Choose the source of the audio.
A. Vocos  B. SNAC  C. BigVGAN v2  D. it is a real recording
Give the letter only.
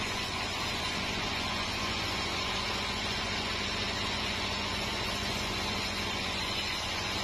A